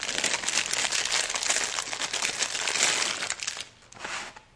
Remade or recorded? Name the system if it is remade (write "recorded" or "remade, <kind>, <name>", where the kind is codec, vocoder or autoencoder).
recorded